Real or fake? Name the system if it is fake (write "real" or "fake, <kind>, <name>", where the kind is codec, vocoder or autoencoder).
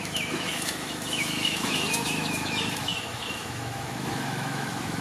fake, autoencoder, DAC-VAE